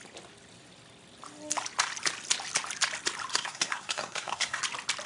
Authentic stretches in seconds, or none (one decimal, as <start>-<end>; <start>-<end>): 0.0-3.3; 4.6-5.1